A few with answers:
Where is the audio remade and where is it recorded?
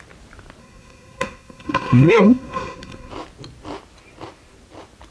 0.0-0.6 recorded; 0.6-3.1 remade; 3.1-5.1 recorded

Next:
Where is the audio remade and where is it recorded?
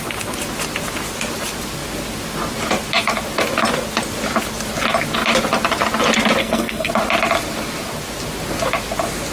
0.0-6.4 recorded; 6.4-6.9 remade; 6.9-9.3 recorded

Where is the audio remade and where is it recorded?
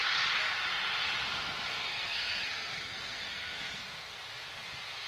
0.0-1.7 recorded; 1.7-4.2 remade; 4.2-5.1 recorded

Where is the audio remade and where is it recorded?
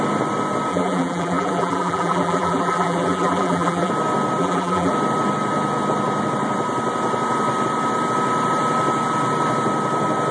0.0-0.7 recorded; 0.7-3.9 remade; 3.9-4.4 recorded; 4.4-4.9 remade; 4.9-10.3 recorded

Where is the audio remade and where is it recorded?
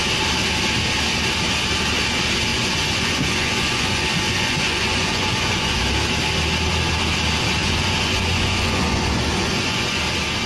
0.0-2.5 recorded; 2.5-5.8 remade; 5.8-7.6 recorded; 7.6-10.0 remade; 10.0-10.5 recorded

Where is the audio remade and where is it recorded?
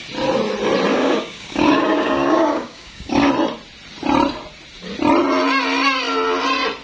0.0-0.9 recorded; 0.9-3.3 remade; 3.3-6.8 recorded